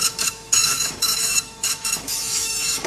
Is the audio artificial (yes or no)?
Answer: yes